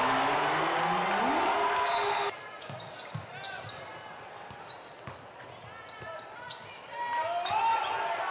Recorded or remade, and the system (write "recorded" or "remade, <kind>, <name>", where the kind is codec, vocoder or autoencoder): recorded